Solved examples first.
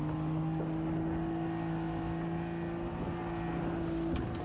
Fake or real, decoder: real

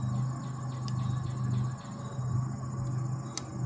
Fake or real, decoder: real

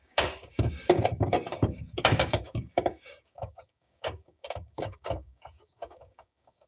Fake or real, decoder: fake, codec, DAC